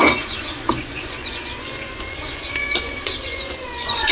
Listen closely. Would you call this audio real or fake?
fake